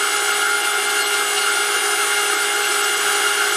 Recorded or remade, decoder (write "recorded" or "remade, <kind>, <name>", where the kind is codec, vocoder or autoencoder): recorded